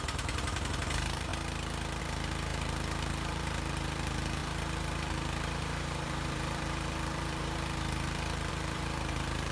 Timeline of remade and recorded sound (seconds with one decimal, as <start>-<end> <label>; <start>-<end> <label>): 0.0-1.3 remade; 1.3-2.0 recorded; 2.0-9.5 remade